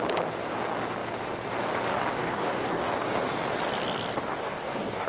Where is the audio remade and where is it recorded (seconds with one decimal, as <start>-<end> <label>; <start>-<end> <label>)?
0.0-2.2 recorded; 2.2-2.9 remade; 2.9-4.4 recorded; 4.4-5.1 remade